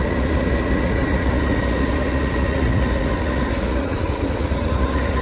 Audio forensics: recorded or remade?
remade